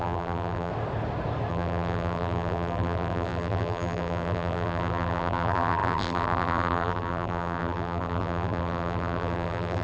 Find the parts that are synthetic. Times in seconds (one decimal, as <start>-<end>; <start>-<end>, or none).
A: 0.0-0.7; 1.5-9.8